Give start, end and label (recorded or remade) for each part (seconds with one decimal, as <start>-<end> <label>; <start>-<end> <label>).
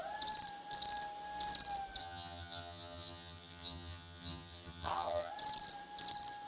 0.0-2.0 recorded; 2.0-5.3 remade; 5.3-6.5 recorded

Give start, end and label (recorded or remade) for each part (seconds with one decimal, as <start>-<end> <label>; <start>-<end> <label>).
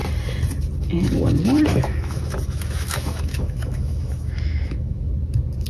0.0-1.7 recorded; 1.7-5.1 remade; 5.1-5.7 recorded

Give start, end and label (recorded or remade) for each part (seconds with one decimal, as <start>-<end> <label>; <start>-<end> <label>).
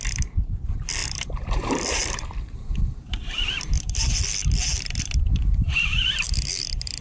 0.0-7.0 remade